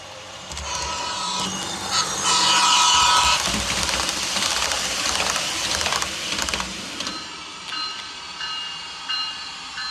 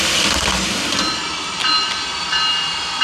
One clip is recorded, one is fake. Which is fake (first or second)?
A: first